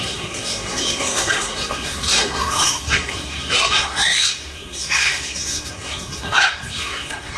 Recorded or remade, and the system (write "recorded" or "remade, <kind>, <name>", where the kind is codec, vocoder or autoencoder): remade, codec, SNAC